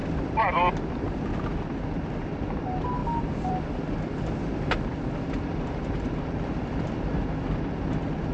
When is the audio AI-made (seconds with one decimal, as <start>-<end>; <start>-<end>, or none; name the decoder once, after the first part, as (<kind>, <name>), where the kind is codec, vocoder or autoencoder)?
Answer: 0.0-0.9 (vocoder, BigVGAN v2); 3.0-6.8